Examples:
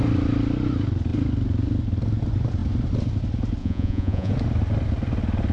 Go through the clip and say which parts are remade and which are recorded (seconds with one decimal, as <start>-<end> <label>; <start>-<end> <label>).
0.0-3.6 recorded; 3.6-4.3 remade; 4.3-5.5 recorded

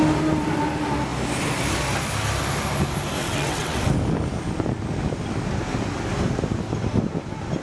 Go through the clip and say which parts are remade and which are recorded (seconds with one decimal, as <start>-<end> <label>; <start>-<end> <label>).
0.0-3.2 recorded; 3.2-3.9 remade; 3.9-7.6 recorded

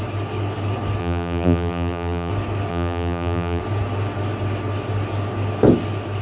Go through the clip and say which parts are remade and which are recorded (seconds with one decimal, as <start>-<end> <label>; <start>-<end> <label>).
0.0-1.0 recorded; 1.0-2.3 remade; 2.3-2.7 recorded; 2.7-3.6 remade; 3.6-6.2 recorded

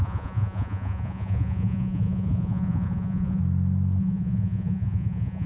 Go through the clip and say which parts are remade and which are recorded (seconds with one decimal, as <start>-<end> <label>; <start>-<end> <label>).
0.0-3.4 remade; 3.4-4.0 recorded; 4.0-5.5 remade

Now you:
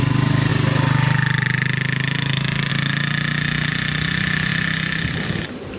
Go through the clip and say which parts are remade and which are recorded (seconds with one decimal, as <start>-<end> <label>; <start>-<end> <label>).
0.0-5.8 recorded

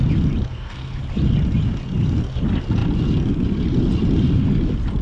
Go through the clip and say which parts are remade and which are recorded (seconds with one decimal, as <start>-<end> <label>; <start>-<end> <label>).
0.0-0.5 recorded; 0.5-1.0 remade; 1.0-5.0 recorded

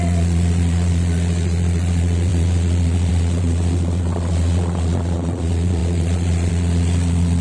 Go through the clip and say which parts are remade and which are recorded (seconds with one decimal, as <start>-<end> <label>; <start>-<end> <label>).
0.0-7.4 remade

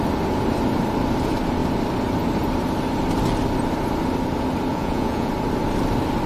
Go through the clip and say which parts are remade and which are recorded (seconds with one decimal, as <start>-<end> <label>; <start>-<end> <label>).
0.0-4.7 recorded; 4.7-5.3 remade; 5.3-6.3 recorded